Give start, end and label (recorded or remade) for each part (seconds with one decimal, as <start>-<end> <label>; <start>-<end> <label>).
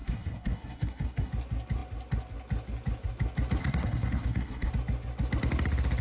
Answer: 0.0-1.3 remade; 1.3-3.6 recorded; 3.6-4.7 remade; 4.7-6.0 recorded